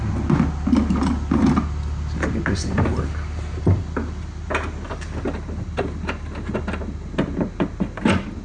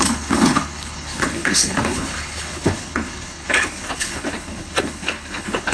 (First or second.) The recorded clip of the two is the first